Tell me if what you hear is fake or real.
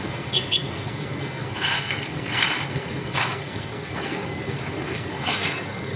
fake